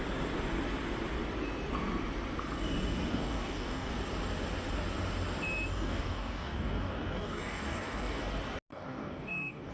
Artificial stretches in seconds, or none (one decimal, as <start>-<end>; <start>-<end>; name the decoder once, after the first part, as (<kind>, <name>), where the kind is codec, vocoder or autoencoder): 3.1-3.9 (codec, DAC); 5.7-8.2; 8.7-9.7

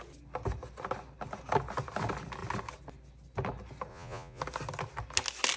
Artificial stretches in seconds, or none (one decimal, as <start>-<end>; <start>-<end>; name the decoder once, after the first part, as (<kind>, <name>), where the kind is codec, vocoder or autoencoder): 3.9-4.4 (vocoder, Vocos)

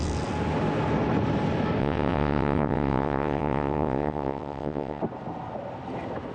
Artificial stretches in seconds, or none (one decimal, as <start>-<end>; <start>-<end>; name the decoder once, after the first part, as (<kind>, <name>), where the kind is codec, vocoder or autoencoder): 1.8-5.0 (vocoder, WaveNeXt)

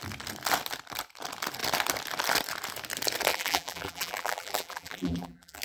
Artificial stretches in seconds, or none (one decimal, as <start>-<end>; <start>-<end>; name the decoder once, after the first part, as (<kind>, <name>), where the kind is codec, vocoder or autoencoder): 3.3-5.6 (vocoder, BigVGAN v2)

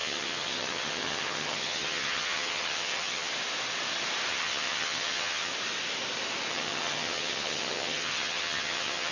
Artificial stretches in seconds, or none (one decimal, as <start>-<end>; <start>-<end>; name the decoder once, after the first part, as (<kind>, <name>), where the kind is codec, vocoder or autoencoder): 0.0-3.3 (vocoder, HiFi-GAN); 4.3-5.5; 6.5-9.1